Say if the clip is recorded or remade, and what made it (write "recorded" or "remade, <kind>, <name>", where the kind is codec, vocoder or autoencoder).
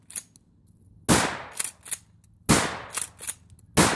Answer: recorded